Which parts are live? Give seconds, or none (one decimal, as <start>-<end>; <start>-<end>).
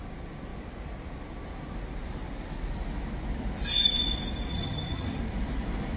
0.0-4.5; 5.2-6.0